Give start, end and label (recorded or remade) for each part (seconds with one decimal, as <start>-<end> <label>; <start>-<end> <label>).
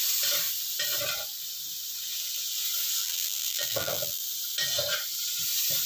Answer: 0.0-3.0 recorded; 3.0-4.2 remade; 4.2-5.9 recorded